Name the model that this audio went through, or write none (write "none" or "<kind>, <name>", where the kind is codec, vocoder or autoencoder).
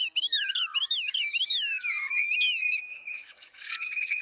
autoencoder, DAC-VAE